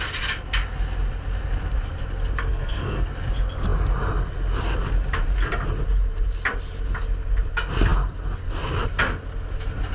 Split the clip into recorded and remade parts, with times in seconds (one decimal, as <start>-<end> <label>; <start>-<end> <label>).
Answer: 0.0-2.5 recorded; 2.5-3.1 remade; 3.1-9.9 recorded